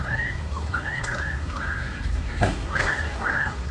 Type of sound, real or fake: fake